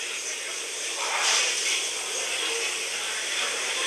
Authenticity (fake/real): fake